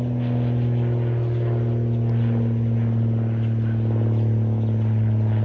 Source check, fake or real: real